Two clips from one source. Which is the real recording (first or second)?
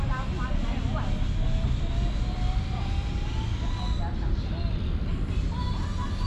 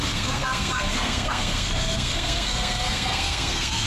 first